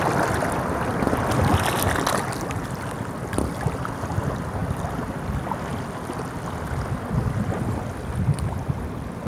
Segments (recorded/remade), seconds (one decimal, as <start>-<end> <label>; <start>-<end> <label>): 0.0-9.3 recorded